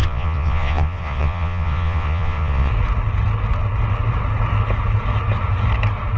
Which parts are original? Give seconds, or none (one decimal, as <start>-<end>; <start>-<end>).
2.7-6.2